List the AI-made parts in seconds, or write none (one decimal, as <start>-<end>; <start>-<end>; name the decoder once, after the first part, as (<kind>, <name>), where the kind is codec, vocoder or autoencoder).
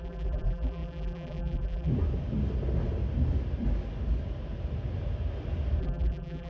0.0-1.9 (vocoder, BigVGAN v2); 5.8-6.5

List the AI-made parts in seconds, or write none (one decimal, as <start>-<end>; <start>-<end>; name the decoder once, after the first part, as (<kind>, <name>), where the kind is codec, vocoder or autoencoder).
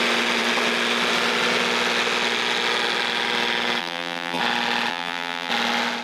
3.8-4.4 (vocoder, BigVGAN v2); 4.9-5.5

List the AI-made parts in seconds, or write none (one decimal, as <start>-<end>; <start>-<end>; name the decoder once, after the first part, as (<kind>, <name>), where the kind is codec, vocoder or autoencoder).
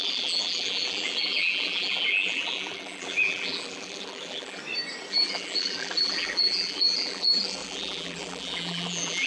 0.0-4.6 (vocoder, BigVGAN v2); 5.1-9.3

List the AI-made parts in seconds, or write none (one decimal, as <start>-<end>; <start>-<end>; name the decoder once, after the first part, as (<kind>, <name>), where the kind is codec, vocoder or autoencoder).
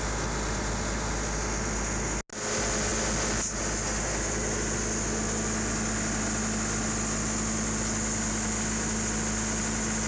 none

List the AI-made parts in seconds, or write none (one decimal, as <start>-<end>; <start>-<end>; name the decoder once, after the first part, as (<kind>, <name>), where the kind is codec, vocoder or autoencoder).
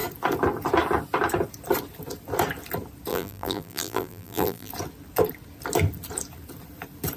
3.1-4.7 (vocoder, BigVGAN v2)